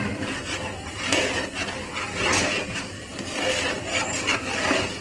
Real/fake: fake